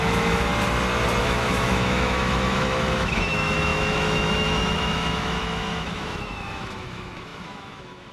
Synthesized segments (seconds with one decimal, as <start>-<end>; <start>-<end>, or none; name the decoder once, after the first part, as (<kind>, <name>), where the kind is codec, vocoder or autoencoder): 0.0-0.5 (autoencoder, DAC-VAE); 1.2-8.1